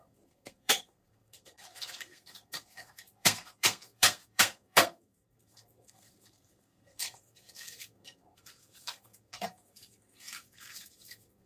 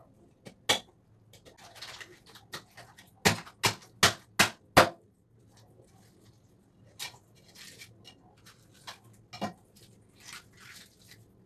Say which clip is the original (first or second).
second